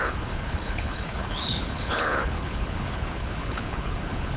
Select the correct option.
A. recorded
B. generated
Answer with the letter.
B